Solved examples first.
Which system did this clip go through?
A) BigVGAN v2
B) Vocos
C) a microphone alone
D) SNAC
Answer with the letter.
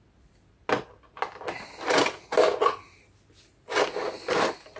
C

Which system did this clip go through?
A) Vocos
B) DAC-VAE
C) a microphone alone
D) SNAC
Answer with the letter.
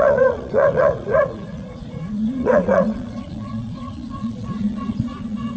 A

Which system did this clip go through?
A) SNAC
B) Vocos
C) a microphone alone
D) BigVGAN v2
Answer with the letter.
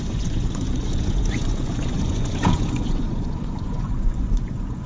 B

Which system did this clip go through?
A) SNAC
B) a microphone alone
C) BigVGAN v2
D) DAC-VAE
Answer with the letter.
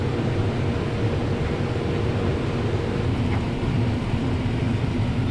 B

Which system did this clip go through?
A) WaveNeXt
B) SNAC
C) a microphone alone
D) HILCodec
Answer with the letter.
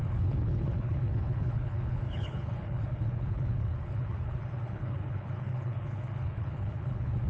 D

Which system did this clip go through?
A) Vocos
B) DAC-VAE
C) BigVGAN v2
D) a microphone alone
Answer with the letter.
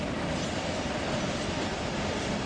D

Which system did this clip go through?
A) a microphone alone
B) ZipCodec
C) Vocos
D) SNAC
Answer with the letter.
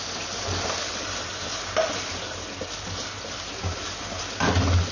A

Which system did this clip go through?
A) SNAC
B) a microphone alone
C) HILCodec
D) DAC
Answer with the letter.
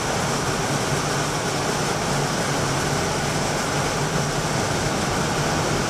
B